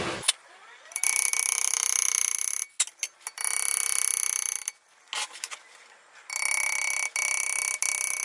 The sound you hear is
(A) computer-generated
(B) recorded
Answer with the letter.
B